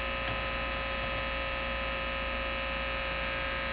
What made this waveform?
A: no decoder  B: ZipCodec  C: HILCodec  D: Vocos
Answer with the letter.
A